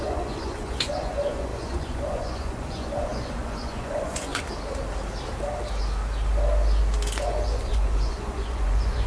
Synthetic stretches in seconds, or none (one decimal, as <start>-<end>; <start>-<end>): 0.0-4.3; 7.2-9.1